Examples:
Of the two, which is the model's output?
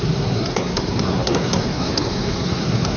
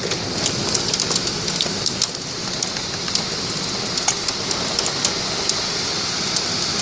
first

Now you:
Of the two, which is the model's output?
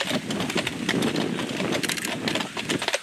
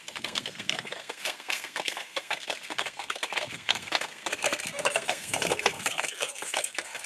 second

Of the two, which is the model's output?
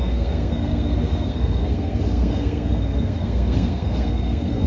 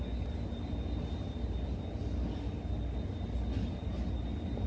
first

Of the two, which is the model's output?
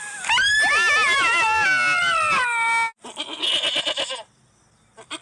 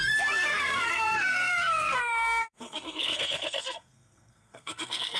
second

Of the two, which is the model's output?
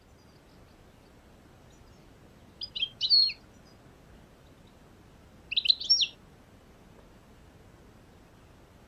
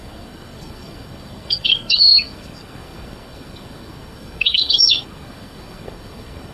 second